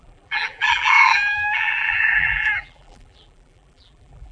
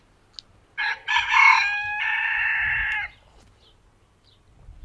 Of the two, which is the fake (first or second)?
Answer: first